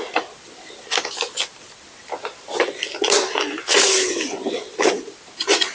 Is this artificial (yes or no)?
no